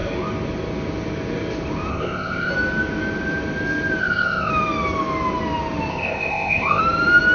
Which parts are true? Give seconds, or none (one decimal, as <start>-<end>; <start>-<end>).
0.0-1.9; 2.5-4.0; 4.5-5.9; 6.8-7.3